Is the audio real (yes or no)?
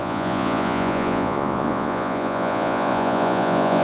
no